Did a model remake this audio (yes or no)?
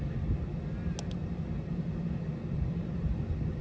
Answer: no